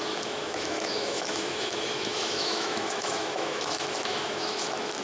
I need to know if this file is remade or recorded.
remade